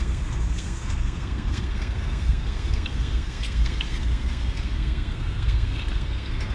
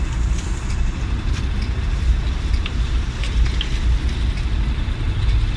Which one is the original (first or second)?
second